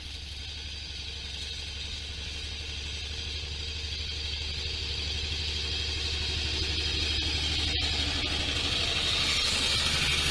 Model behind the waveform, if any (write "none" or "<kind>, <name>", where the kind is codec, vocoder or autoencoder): none